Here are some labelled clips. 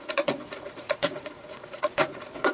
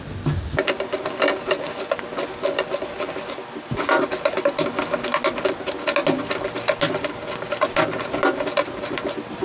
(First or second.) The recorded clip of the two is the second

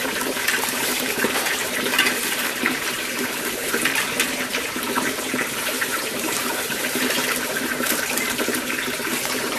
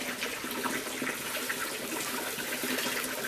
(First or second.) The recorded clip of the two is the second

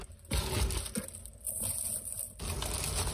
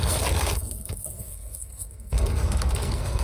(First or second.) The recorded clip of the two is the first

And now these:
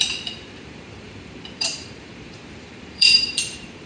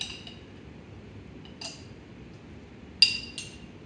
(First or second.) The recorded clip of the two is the second